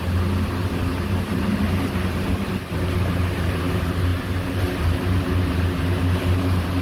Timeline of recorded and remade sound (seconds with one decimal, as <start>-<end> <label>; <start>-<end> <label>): 0.0-6.8 remade